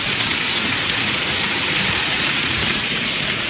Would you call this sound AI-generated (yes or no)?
yes